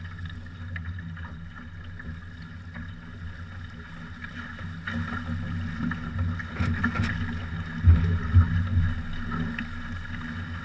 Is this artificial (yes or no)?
no